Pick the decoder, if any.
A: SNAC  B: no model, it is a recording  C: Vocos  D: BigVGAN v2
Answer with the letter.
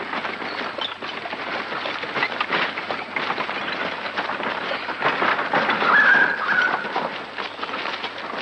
B